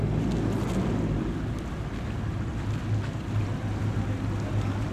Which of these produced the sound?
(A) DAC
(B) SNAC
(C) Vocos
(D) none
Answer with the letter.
D